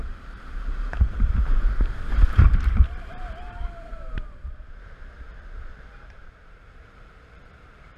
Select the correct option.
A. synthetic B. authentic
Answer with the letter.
A